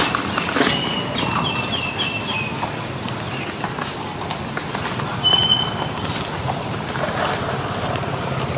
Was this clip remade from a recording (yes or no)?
no